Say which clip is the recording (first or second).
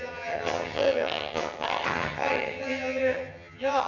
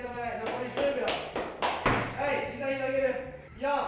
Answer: second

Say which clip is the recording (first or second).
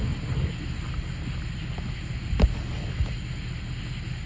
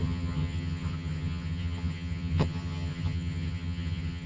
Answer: first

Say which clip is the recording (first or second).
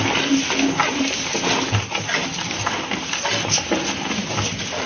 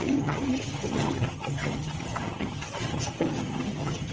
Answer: first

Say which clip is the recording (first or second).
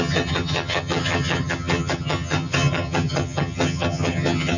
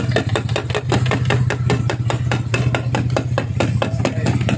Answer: second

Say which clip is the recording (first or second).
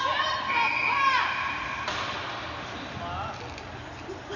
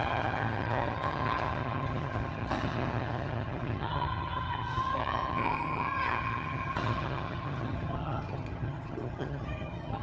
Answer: first